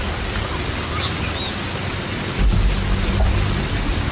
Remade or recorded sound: recorded